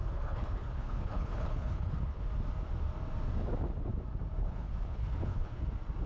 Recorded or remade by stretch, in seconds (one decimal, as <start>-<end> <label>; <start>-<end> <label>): 0.0-2.3 remade; 2.3-4.4 recorded; 4.4-5.6 remade; 5.6-6.1 recorded